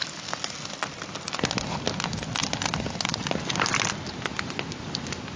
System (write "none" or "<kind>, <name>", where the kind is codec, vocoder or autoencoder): none